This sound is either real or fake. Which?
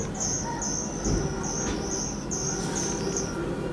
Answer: real